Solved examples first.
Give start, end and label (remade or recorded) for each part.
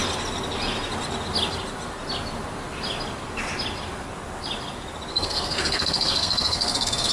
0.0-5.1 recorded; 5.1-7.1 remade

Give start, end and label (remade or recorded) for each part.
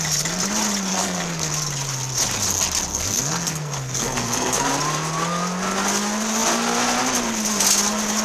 0.0-0.9 recorded; 0.9-1.5 remade; 1.5-2.9 recorded; 2.9-4.7 remade; 4.7-8.2 recorded